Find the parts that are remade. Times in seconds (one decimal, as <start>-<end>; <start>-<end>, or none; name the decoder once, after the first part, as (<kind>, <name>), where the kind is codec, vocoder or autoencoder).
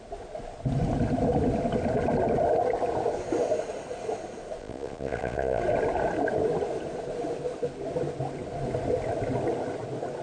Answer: 4.6-5.6 (vocoder, Vocos)